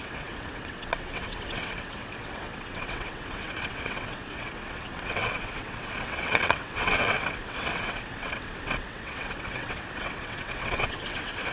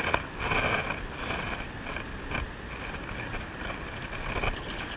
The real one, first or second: second